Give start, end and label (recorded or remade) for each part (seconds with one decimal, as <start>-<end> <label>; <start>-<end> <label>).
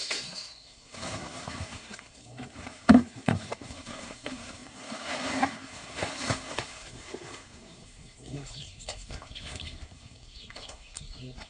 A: 0.0-11.5 remade